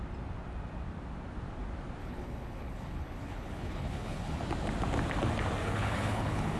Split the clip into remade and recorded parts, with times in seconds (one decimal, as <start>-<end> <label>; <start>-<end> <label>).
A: 0.0-2.0 recorded; 2.0-4.4 remade; 4.4-5.6 recorded; 5.6-6.6 remade